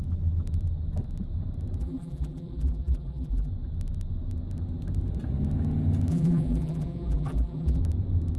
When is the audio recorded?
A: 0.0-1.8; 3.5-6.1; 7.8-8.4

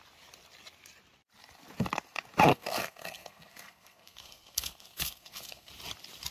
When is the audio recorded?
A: 0.0-2.5; 5.7-6.3

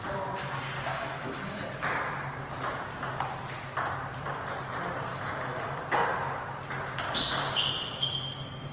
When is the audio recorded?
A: 0.0-0.9; 1.7-5.1; 5.8-8.7

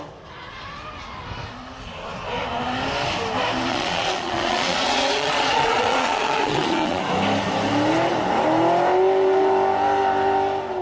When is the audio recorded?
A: 0.0-3.7; 7.0-10.8

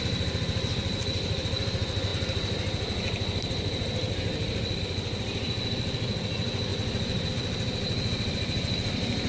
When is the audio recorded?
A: 0.0-9.3